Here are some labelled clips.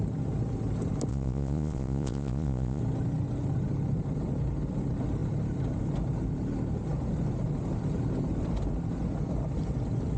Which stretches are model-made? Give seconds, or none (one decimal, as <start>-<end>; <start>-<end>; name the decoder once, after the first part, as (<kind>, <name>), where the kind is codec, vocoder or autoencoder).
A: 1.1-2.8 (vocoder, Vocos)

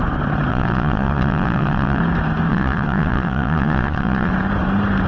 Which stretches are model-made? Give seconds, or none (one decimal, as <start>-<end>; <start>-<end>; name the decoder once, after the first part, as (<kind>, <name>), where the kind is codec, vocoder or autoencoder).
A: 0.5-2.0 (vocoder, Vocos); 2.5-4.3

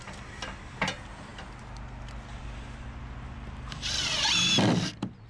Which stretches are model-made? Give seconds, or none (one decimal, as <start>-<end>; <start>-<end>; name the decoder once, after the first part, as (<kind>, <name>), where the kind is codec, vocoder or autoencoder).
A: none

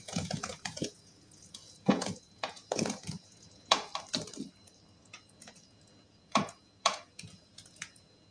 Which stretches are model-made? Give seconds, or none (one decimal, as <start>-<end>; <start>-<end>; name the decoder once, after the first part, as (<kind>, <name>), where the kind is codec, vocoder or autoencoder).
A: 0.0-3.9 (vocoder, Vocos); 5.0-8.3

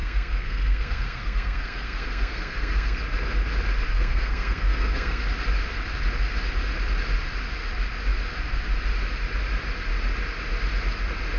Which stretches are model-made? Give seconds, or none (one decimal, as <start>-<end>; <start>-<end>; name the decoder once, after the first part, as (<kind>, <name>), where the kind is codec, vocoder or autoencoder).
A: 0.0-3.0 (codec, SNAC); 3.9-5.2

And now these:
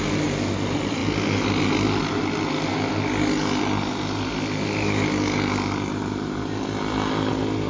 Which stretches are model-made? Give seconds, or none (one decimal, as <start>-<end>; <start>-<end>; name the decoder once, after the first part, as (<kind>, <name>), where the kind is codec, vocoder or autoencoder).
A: none